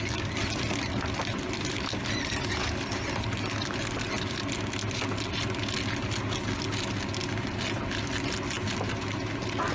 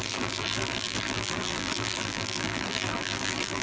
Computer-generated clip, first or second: second